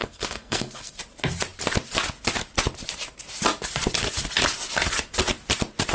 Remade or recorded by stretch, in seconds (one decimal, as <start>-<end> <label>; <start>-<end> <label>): 0.0-1.0 remade; 1.0-5.9 recorded